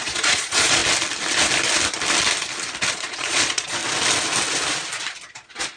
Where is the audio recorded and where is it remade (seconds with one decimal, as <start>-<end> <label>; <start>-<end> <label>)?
0.0-0.8 remade; 0.8-2.9 recorded; 2.9-3.8 remade; 3.8-5.8 recorded